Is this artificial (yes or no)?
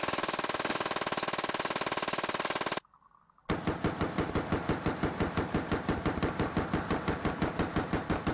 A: no